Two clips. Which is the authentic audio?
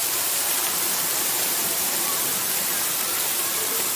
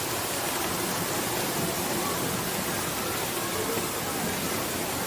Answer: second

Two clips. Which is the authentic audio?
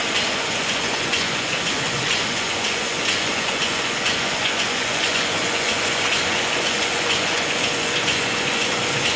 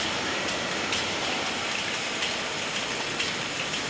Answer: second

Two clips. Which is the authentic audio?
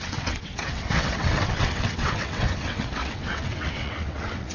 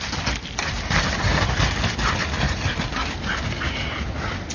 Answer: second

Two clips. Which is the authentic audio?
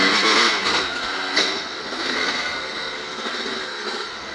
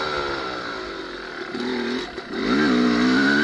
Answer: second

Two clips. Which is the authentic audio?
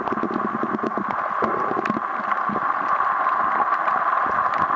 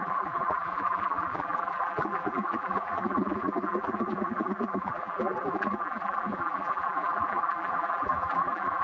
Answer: first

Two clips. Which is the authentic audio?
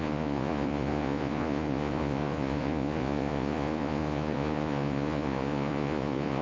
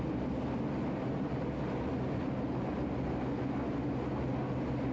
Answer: second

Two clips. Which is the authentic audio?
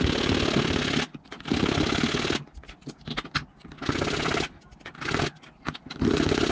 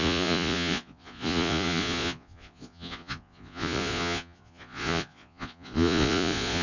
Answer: first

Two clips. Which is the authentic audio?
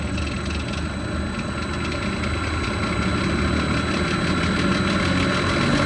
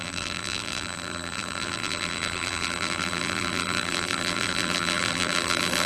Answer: first